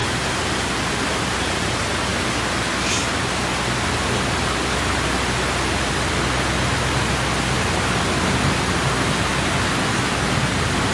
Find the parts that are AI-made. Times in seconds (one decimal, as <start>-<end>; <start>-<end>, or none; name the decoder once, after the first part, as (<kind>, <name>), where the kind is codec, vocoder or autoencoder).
none